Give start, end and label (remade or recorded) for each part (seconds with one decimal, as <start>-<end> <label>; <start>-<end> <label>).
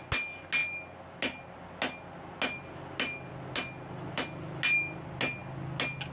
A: 0.0-6.1 recorded